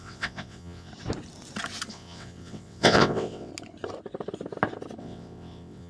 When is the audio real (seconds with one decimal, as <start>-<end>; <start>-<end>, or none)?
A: 0.9-1.9; 3.5-5.0